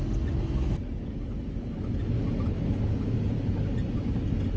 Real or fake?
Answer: real